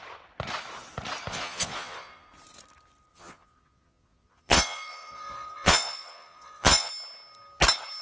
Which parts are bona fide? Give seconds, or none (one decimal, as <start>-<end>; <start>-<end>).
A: 0.0-1.3; 2.3-3.1; 6.9-8.0